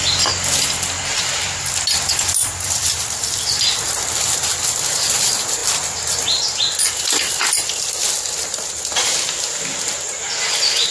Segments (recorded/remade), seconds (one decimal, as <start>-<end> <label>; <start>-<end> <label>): 0.0-10.9 recorded